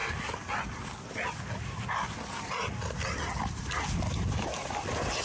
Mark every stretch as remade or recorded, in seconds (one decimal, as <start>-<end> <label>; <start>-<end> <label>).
0.0-5.2 recorded